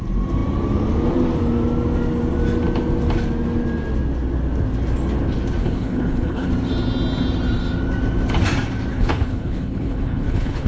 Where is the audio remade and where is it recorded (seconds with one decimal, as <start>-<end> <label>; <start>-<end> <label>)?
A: 0.0-5.6 recorded; 5.6-6.5 remade; 6.5-8.9 recorded; 8.9-10.7 remade